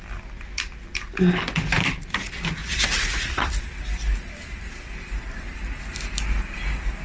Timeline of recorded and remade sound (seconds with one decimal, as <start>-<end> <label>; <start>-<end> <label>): 0.0-2.6 recorded; 2.6-3.5 remade; 3.5-7.0 recorded